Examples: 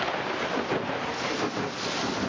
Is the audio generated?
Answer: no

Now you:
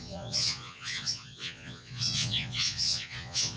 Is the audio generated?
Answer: yes